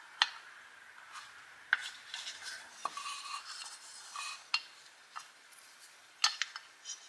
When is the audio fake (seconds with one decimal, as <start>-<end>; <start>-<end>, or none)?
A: none